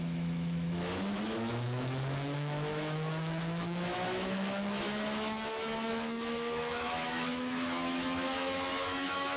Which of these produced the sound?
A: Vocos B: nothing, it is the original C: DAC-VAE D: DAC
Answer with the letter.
C